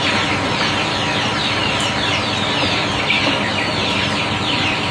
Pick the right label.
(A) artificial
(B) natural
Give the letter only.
A